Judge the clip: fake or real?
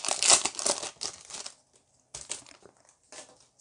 real